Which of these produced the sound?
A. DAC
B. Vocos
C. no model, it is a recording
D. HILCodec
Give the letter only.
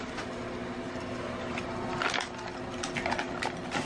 C